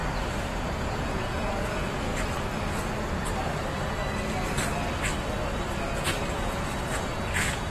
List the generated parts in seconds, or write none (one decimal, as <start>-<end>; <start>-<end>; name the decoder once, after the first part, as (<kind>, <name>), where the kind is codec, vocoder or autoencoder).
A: 0.7-2.1 (vocoder, Vocos); 6.3-7.7